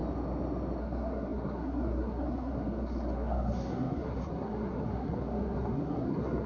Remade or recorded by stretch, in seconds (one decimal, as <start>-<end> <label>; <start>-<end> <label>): 0.0-0.8 recorded; 0.8-6.5 remade